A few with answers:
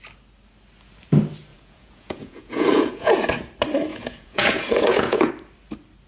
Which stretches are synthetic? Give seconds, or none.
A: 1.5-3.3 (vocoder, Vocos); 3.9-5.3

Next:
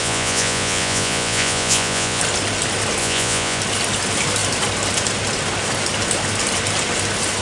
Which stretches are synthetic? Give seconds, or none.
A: 0.0-2.2 (vocoder, Vocos); 3.0-3.6

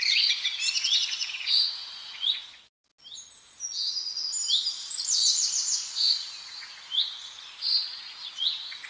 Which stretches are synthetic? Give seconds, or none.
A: 0.0-2.9 (vocoder, Vocos); 4.7-8.9

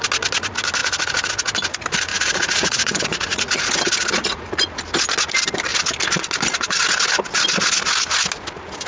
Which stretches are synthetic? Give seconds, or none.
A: 0.8-1.3 (vocoder, Vocos); 2.1-3.6; 4.2-4.8